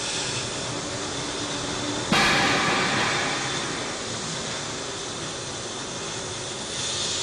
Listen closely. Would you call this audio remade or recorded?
recorded